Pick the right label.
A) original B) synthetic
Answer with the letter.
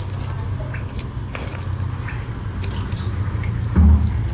A